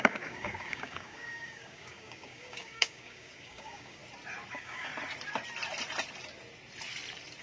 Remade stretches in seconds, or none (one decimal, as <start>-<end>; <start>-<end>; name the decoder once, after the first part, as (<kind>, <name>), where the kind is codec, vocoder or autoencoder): 0.0-4.0 (codec, DAC); 4.5-4.9